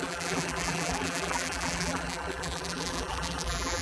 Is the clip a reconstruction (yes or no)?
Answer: yes